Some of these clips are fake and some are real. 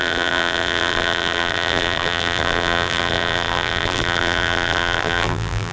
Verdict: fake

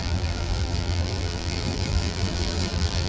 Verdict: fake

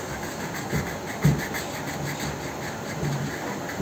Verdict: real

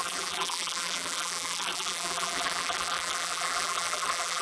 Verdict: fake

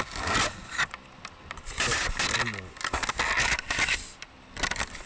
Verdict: real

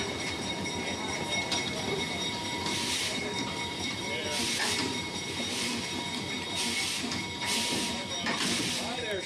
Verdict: fake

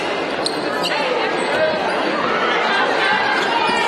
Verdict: real